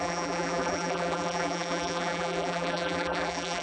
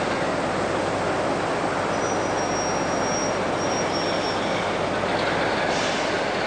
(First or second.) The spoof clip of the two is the first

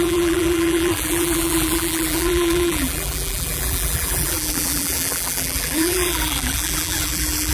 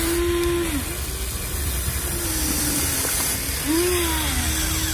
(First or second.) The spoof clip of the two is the first